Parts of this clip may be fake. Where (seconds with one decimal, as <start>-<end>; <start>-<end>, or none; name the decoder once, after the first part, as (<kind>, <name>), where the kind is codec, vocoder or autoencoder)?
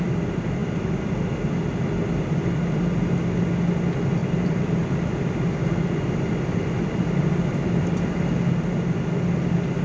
4.2-5.0 (vocoder, BigVGAN v2)